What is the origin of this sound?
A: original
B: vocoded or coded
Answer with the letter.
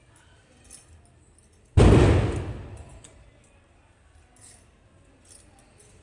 A